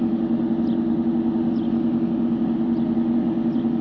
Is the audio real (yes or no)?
yes